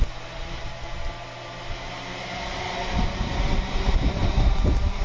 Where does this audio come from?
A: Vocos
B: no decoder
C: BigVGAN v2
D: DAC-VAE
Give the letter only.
B